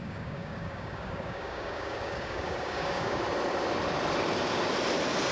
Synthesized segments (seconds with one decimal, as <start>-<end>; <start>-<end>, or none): 0.0-3.2

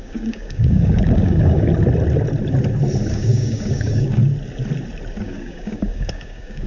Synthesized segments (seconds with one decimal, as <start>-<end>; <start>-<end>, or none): 0.0-1.7; 3.1-4.2; 5.2-6.7

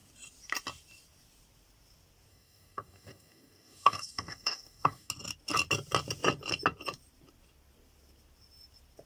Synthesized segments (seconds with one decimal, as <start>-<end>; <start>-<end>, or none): 2.3-5.1

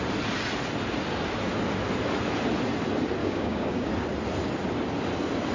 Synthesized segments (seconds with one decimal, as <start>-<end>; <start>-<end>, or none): 3.2-3.9

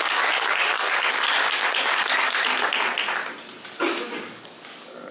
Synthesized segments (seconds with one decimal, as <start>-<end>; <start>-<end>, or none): 0.0-2.5; 3.8-5.1